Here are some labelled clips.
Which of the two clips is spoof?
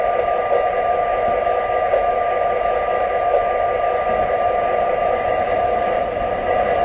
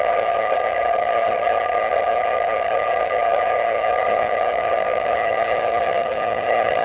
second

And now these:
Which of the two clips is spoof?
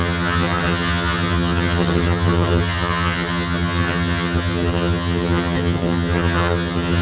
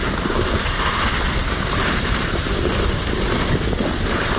first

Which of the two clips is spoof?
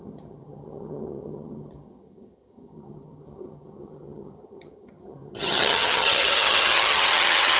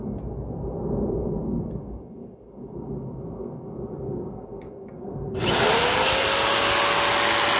first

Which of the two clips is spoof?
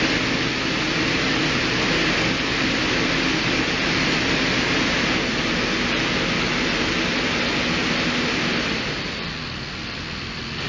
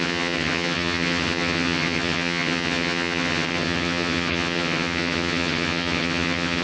second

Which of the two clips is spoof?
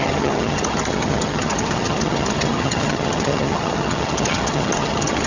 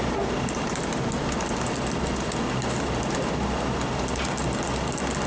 first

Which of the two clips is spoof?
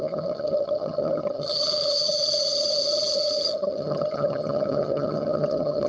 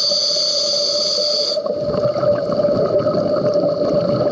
first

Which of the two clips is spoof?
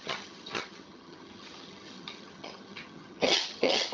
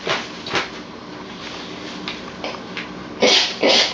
first